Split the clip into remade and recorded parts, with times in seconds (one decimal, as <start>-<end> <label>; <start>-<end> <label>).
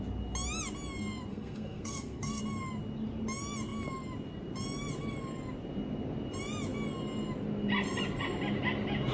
0.0-1.3 recorded; 1.3-2.4 remade; 2.4-9.1 recorded